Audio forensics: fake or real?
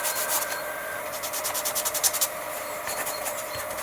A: fake